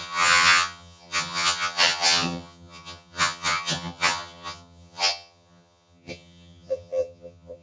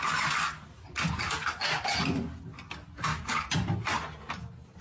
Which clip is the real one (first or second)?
second